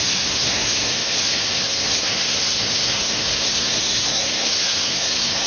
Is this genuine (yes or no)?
no